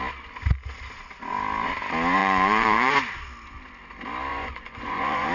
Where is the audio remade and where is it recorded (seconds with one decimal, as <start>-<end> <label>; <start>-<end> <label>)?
0.0-2.2 recorded; 2.2-2.9 remade; 2.9-4.3 recorded; 4.3-5.3 remade